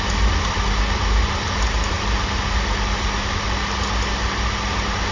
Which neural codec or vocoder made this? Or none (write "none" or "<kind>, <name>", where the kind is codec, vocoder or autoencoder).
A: none